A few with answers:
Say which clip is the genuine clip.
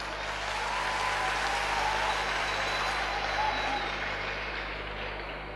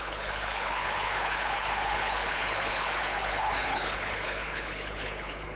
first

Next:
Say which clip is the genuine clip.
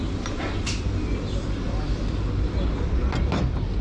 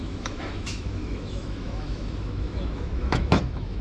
first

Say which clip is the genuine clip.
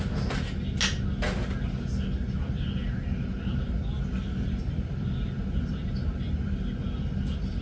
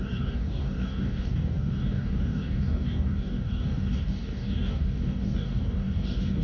first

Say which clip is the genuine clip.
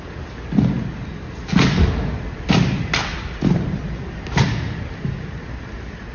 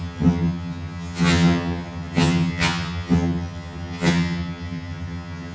first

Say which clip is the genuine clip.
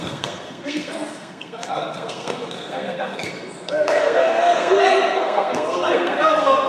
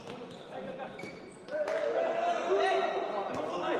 second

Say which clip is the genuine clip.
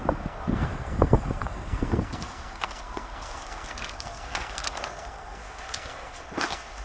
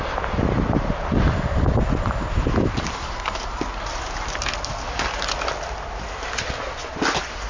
second